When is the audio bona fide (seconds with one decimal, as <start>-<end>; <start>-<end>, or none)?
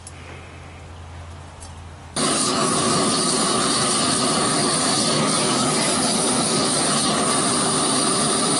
0.0-2.0; 3.6-4.6; 6.8-8.6